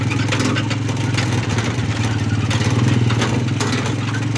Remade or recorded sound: recorded